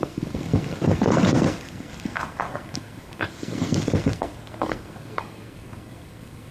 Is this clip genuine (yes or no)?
no